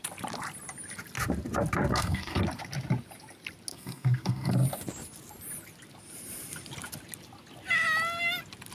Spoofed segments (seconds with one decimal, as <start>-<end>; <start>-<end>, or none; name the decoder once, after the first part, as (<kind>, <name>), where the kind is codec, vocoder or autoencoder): 1.9-2.4 (codec, SNAC); 3.7-4.5